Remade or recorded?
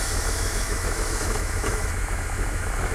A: remade